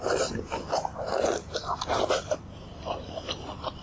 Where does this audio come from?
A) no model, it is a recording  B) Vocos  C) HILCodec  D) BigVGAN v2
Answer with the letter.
A